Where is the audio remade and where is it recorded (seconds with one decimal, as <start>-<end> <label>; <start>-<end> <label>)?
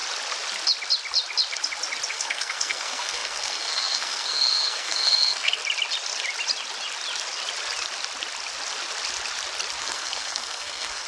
0.0-2.1 recorded; 2.1-5.6 remade; 5.6-9.8 recorded; 9.8-11.1 remade